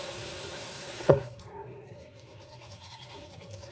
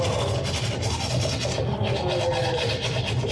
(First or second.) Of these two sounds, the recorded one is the second